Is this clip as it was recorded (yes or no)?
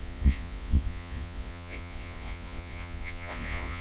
no